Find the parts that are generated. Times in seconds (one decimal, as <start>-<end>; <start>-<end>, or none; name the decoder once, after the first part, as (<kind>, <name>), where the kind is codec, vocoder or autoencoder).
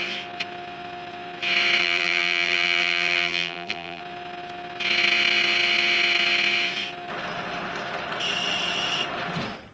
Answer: 1.8-4.0 (vocoder, BigVGAN v2)